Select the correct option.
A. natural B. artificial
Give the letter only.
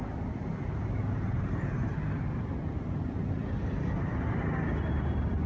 A